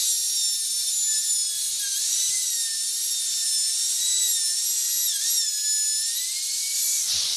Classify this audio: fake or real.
real